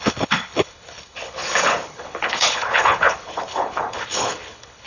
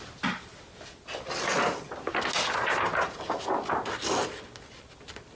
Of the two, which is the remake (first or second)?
first